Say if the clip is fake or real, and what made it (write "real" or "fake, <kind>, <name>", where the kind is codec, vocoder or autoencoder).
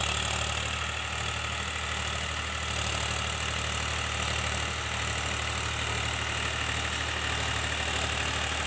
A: real